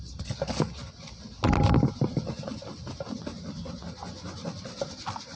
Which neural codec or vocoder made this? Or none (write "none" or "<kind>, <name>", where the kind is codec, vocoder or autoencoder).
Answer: none